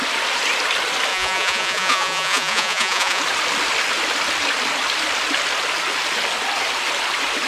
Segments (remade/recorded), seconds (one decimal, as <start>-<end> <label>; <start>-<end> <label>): 0.0-1.1 recorded; 1.1-3.2 remade; 3.2-7.5 recorded